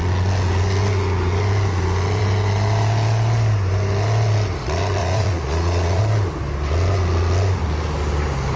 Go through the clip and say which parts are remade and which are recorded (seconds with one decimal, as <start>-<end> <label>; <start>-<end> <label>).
0.0-5.0 recorded; 5.0-6.0 remade; 6.0-8.6 recorded